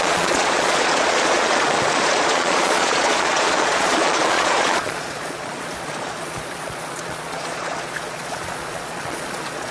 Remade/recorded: remade